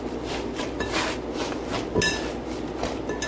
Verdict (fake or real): real